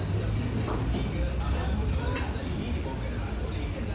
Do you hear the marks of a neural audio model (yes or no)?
no